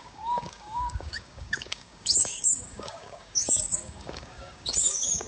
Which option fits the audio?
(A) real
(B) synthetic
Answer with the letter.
B